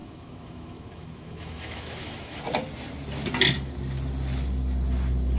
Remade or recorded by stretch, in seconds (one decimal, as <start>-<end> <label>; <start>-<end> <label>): 0.0-2.4 remade; 2.4-5.4 recorded